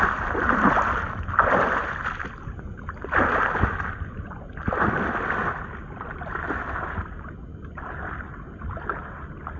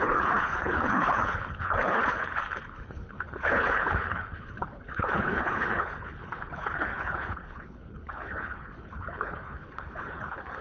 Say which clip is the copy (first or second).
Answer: second